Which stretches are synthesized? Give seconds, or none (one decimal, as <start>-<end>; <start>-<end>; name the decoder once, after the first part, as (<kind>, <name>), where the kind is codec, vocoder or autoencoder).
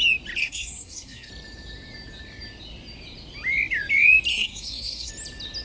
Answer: 0.4-1.3 (codec, SNAC); 4.3-5.1